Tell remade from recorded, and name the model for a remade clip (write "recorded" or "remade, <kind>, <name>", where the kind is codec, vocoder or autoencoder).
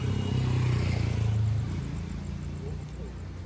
recorded